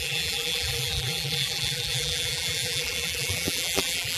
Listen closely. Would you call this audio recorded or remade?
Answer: remade